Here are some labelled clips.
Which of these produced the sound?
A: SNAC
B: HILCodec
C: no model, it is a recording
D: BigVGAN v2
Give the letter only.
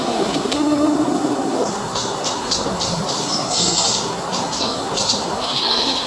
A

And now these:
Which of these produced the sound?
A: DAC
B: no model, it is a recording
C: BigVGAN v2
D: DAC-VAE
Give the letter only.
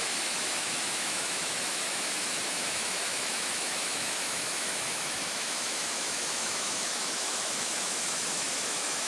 D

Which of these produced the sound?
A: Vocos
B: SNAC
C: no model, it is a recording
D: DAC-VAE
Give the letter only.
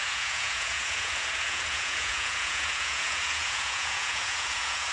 A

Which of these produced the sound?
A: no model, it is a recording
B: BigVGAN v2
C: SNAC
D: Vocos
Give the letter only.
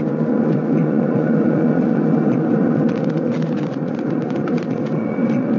D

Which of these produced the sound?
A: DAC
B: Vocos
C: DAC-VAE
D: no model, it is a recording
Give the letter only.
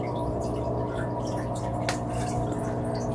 D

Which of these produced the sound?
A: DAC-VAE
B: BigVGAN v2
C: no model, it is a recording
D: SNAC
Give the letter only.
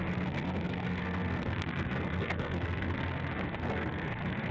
D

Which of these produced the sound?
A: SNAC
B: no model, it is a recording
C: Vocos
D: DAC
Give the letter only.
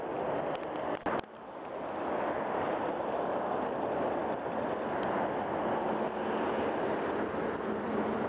B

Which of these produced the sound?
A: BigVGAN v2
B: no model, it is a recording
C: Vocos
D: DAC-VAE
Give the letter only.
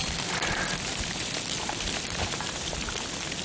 A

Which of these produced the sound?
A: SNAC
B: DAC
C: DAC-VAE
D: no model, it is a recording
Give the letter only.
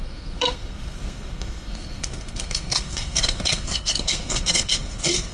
A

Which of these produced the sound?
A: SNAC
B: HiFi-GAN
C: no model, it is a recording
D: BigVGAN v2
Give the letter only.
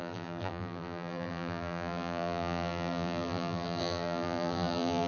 D